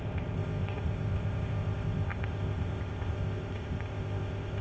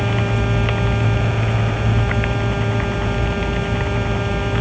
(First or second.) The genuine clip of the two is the second